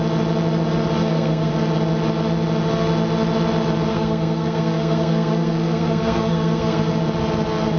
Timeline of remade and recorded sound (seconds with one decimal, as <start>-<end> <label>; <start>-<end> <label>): 0.0-1.0 recorded; 1.0-1.5 remade; 1.5-3.9 recorded; 3.9-7.0 remade; 7.0-7.8 recorded